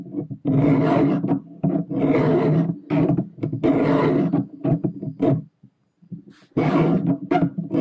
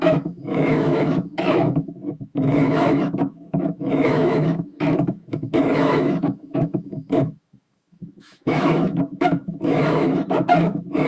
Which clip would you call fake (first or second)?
second